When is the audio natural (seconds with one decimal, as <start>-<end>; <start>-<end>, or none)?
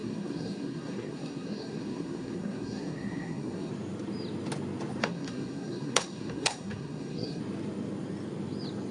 3.7-5.0; 7.4-8.9